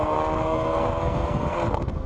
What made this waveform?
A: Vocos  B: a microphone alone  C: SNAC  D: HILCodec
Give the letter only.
C